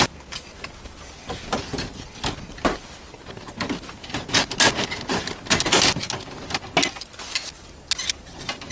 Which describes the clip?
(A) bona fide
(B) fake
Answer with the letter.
A